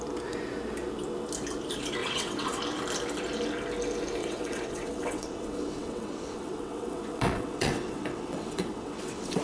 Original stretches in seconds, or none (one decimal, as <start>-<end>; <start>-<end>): 0.0-2.0; 2.6-4.2